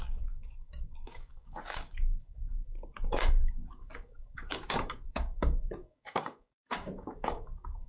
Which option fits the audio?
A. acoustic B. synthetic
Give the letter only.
B